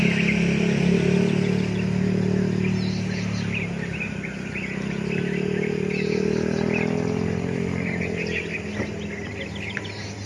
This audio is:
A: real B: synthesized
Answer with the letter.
A